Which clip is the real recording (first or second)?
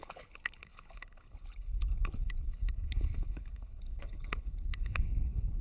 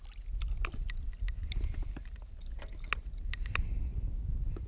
second